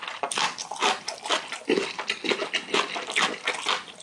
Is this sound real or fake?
real